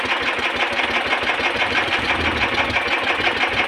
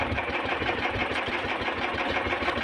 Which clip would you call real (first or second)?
first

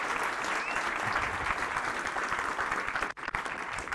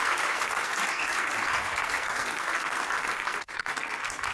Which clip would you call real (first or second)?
first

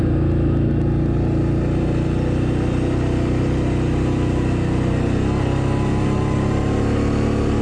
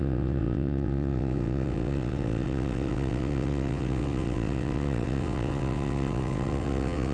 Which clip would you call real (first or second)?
first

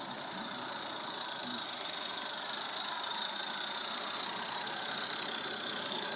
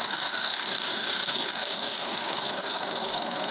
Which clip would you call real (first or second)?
first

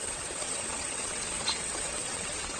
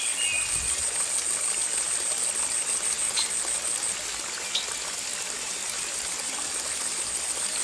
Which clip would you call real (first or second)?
second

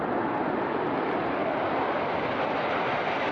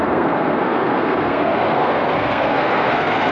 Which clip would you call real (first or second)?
first